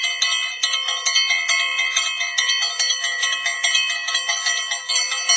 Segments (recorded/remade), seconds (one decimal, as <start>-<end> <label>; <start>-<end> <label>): 0.0-5.4 recorded